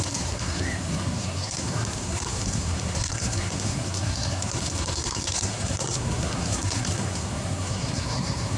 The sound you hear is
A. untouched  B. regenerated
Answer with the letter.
B